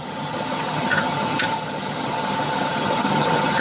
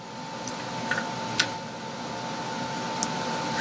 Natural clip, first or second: second